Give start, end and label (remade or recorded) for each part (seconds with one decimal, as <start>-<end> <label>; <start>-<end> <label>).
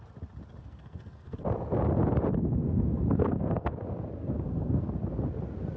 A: 0.0-0.6 recorded; 0.6-1.4 remade; 1.4-2.6 recorded; 2.6-3.7 remade; 3.7-4.2 recorded; 4.2-4.9 remade; 4.9-5.8 recorded